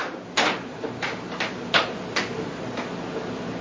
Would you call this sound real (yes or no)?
yes